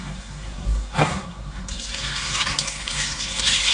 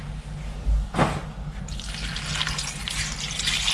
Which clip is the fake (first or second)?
first